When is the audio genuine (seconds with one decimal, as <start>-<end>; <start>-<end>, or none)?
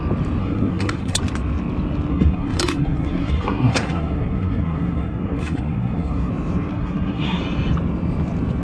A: 0.0-0.4; 1.2-2.1; 6.3-6.7; 7.4-8.6